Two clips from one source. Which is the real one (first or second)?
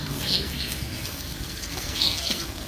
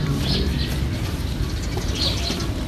second